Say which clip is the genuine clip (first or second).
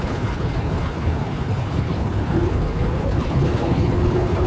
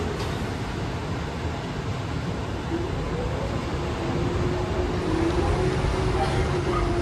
second